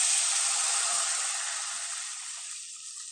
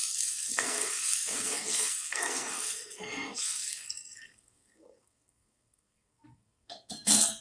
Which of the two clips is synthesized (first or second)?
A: second